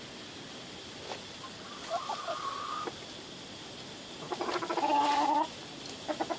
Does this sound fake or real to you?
real